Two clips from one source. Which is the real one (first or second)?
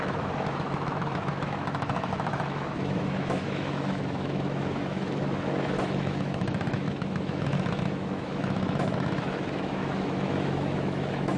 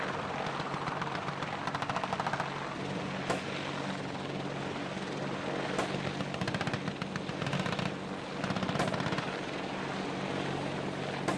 second